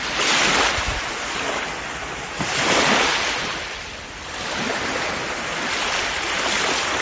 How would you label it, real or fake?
real